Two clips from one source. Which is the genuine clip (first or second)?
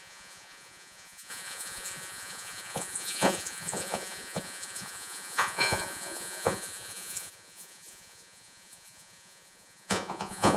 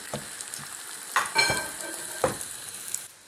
second